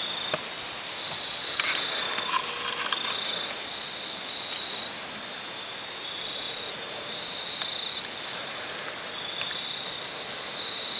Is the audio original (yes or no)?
yes